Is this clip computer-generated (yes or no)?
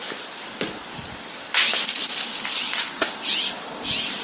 yes